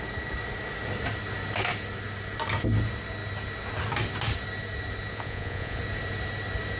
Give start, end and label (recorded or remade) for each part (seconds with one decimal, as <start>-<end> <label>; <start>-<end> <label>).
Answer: 0.0-5.1 recorded; 5.1-5.8 remade; 5.8-6.8 recorded